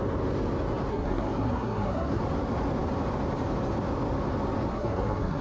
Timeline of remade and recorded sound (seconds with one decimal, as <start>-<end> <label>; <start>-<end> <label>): 0.0-0.9 recorded; 0.9-2.2 remade; 2.2-4.7 recorded; 4.7-5.4 remade